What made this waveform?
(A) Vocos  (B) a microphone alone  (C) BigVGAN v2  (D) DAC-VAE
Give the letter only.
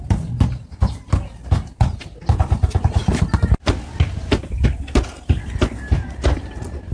B